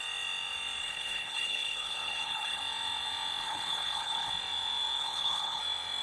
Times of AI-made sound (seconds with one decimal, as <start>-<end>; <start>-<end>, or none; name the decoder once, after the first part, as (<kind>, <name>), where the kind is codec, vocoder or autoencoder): 0.8-2.6 (codec, HILCodec); 3.4-4.3; 5.0-5.6

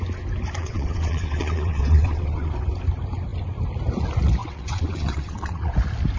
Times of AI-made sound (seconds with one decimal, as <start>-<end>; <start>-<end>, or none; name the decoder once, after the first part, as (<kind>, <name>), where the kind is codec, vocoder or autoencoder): 0.6-2.5 (vocoder, WaveNeXt); 4.4-5.7

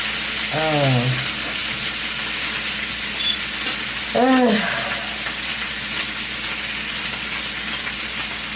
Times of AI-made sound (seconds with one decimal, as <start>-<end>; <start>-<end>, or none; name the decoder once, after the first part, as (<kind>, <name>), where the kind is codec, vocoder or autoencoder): none

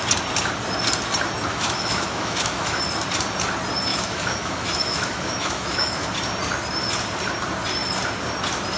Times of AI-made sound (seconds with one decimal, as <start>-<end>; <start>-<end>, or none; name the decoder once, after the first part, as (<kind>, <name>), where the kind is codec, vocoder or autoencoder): 1.5-2.8 (autoencoder, DAC-VAE); 3.9-6.1

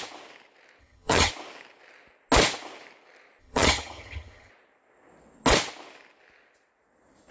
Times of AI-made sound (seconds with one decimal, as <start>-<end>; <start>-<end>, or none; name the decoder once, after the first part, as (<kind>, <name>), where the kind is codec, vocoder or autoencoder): 0.8-1.3 (vocoder, HiFi-GAN); 3.4-4.5

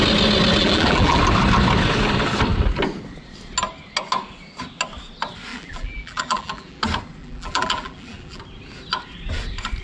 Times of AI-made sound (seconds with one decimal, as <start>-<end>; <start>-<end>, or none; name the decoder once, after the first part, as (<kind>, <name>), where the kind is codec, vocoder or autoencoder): 0.6-1.2 (vocoder, BigVGAN v2); 5.5-6.8; 7.2-8.4

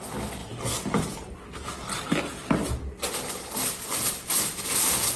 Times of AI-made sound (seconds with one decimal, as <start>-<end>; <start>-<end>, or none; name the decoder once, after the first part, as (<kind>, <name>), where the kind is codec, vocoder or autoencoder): none

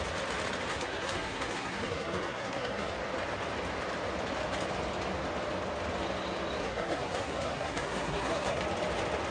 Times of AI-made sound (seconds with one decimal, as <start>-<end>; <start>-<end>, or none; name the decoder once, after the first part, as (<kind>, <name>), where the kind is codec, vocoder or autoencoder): 0.7-2.9 (codec, SNAC); 6.6-8.6